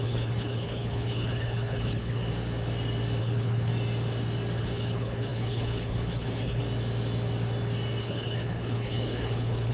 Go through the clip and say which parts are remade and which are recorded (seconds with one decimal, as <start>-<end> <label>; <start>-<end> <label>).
0.0-2.2 remade; 2.2-3.2 recorded; 3.2-3.7 remade; 3.7-4.6 recorded; 4.6-6.6 remade; 6.6-8.0 recorded; 8.0-9.7 remade